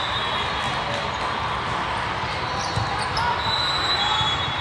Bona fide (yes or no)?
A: yes